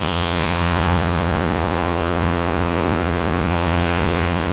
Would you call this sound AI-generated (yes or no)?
yes